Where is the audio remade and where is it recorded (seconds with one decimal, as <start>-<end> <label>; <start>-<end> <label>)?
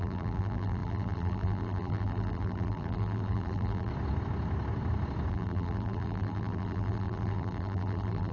0.0-3.9 remade; 3.9-5.3 recorded; 5.3-8.3 remade